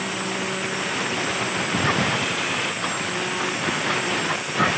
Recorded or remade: recorded